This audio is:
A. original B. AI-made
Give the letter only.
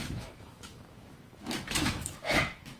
B